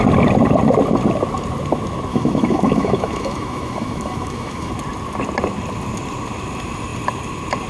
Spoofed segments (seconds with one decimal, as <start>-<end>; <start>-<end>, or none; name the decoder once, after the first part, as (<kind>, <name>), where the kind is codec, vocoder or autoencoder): 2.1-4.7 (autoencoder, DAC-VAE)